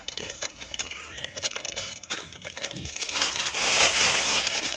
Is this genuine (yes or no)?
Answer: no